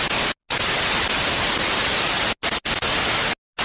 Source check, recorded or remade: recorded